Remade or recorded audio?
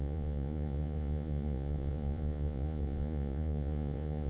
remade